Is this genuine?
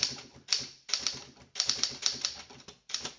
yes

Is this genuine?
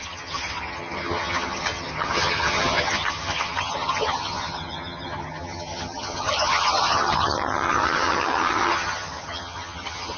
no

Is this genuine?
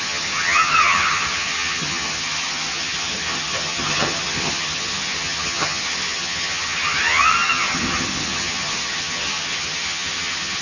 no